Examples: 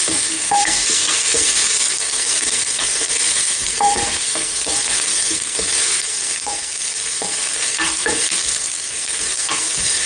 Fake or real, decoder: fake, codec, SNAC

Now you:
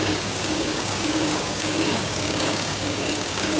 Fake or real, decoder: fake, codec, DAC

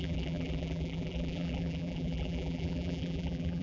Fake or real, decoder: fake, vocoder, BigVGAN v2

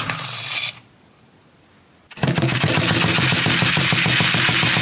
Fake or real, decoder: real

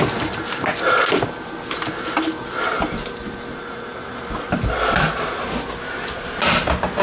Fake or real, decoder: real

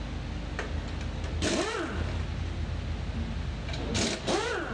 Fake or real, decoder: real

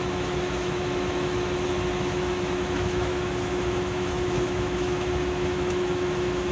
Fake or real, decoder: fake, autoencoder, DAC-VAE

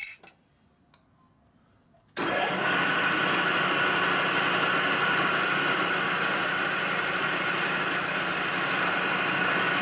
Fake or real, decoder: real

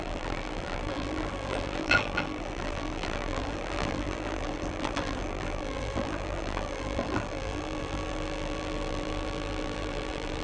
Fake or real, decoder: fake, vocoder, BigVGAN v2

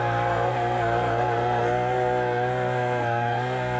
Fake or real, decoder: fake, codec, SNAC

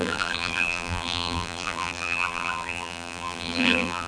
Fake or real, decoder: fake, vocoder, BigVGAN v2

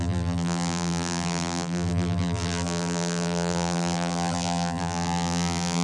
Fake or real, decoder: fake, vocoder, BigVGAN v2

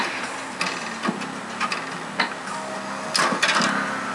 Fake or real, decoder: real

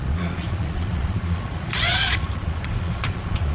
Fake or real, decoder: fake, vocoder, Vocos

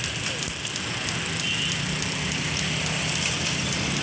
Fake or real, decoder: real